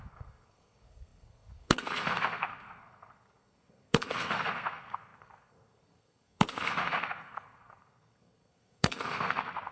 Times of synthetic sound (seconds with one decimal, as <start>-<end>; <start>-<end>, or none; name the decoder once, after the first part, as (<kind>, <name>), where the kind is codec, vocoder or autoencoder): 0.0-9.7 (codec, SNAC)